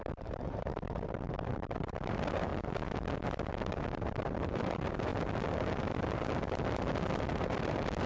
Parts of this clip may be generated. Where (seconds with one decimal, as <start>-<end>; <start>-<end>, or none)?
0.0-2.5; 3.6-5.1; 7.3-8.1